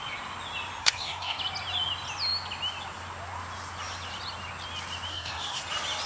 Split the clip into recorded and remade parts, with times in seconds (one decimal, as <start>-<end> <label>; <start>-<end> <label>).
0.0-0.8 recorded; 0.8-1.4 remade; 1.4-5.1 recorded; 5.1-5.6 remade; 5.6-6.1 recorded